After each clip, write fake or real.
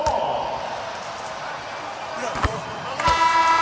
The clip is real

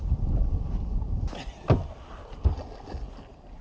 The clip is real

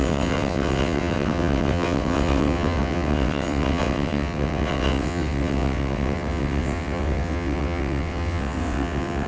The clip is fake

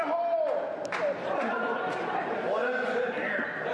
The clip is real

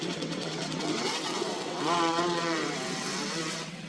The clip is fake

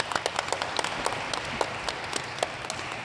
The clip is real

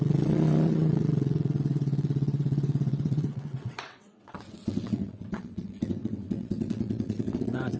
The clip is fake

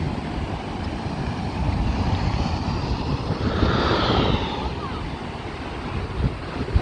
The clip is real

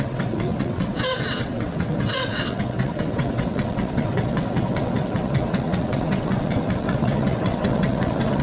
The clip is fake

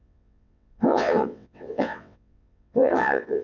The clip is fake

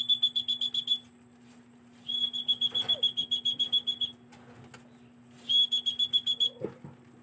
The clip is real